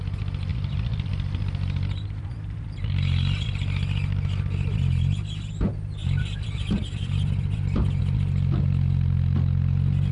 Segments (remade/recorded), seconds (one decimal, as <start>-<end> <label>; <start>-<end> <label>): 0.0-0.5 recorded; 0.5-1.1 remade; 1.1-6.0 recorded; 6.0-8.0 remade; 8.0-10.1 recorded